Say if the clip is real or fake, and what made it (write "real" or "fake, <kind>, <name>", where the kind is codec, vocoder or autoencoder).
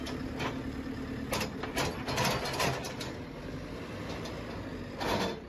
real